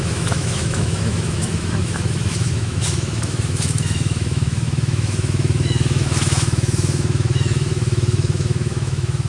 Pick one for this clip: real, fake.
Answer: fake